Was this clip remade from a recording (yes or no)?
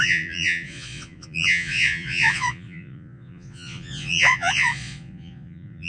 yes